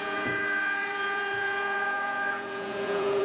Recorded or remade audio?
remade